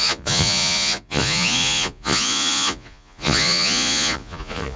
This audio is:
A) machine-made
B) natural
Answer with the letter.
A